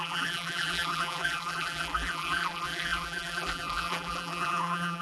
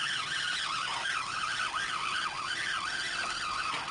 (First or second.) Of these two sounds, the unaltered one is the second